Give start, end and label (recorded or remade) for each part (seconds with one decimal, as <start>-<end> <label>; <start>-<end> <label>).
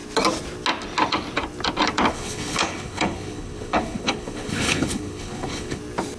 0.0-2.1 recorded; 2.1-5.8 remade; 5.8-6.2 recorded